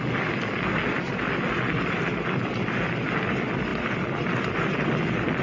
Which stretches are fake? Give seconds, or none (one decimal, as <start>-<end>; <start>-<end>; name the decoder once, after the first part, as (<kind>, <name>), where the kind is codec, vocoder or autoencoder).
none